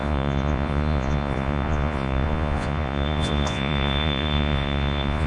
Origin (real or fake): fake